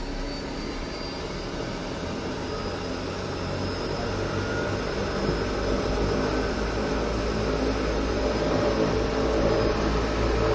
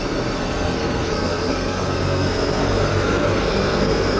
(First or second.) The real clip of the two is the first